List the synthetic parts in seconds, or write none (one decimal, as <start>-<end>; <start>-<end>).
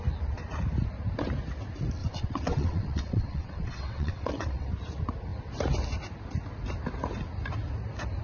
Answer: 2.0-4.7